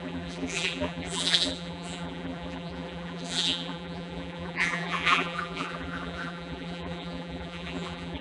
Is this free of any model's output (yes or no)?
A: no